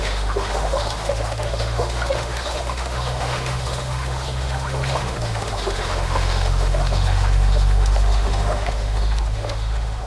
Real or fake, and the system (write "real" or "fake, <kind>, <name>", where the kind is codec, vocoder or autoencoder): fake, autoencoder, DAC-VAE